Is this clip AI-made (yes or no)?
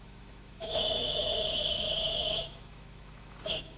yes